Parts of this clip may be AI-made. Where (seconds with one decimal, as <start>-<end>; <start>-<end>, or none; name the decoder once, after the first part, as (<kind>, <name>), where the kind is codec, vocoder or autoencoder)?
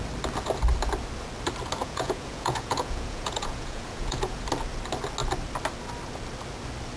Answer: 1.8-4.4 (vocoder, Vocos)